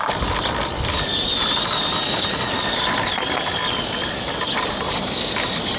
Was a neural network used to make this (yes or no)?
yes